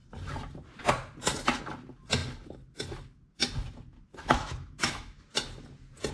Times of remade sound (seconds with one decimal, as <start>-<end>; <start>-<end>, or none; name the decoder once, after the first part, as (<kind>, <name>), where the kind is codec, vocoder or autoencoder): 4.1-5.2 (autoencoder, DAC-VAE)